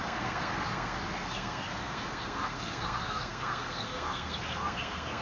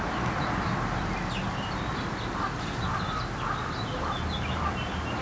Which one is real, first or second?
second